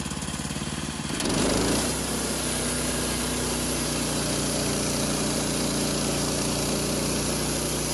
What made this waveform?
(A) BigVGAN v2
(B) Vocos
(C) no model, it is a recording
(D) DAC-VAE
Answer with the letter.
A